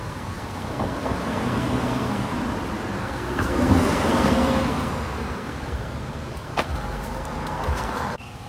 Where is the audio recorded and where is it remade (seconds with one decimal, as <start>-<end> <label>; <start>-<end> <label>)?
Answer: 0.0-2.3 remade; 2.3-3.0 recorded; 3.0-8.5 remade

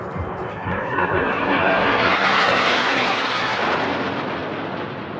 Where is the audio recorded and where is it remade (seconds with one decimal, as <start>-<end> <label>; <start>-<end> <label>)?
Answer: 0.0-0.5 recorded; 0.5-3.6 remade; 3.6-5.2 recorded

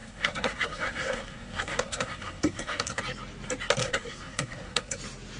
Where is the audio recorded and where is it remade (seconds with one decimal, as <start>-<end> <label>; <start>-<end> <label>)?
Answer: 0.0-3.0 remade; 3.0-3.8 recorded; 3.8-5.0 remade; 5.0-5.4 recorded

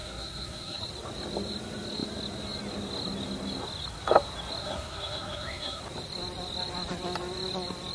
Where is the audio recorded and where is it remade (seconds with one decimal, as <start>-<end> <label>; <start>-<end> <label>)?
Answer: 0.0-0.8 remade; 0.8-4.6 recorded; 4.6-5.8 remade; 5.8-7.9 recorded

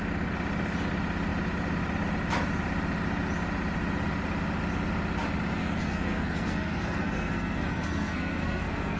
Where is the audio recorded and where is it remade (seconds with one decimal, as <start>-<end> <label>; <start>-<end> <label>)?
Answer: 0.0-5.6 recorded; 5.6-9.0 remade

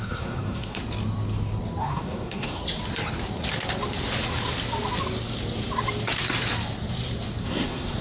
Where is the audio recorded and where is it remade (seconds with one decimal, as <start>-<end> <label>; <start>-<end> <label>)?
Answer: 0.0-0.8 remade; 0.8-1.8 recorded; 1.8-2.6 remade; 2.6-7.4 recorded; 7.4-8.0 remade